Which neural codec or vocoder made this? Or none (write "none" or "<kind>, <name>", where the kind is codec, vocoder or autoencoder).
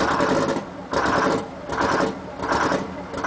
none